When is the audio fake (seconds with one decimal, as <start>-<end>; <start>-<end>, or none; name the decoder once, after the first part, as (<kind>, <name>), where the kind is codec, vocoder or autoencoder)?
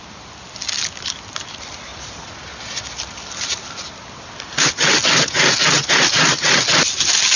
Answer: none